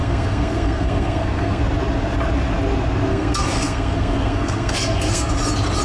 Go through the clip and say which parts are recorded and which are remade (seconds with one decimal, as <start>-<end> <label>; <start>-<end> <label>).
0.0-1.6 remade; 1.6-3.1 recorded; 3.1-5.3 remade; 5.3-5.8 recorded